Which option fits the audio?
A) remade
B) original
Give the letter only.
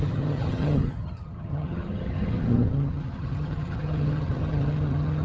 A